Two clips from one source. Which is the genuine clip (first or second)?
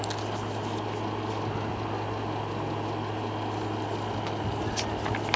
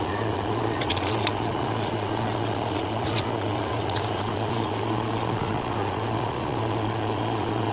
first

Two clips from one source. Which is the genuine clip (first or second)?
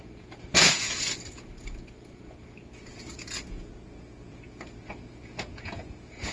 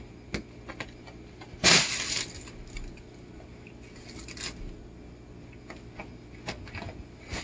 second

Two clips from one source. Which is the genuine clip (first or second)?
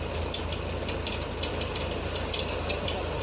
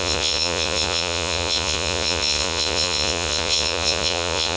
first